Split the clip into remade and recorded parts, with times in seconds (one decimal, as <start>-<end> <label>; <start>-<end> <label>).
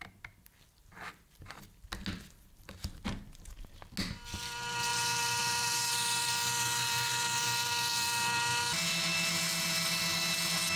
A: 0.0-4.9 recorded; 4.9-6.2 remade; 6.2-10.8 recorded